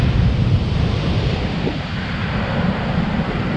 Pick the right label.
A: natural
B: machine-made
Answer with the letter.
B